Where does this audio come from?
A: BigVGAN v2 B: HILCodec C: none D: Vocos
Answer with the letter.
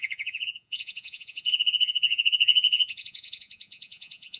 D